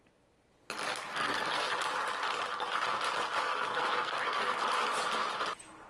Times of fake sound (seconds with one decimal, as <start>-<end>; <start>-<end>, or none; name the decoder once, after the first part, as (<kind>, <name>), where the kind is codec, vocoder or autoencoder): 1.1-1.7 (codec, SNAC); 3.4-4.6